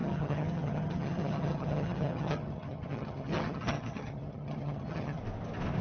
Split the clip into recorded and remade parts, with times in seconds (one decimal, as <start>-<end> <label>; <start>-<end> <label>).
0.0-5.2 remade; 5.2-5.8 recorded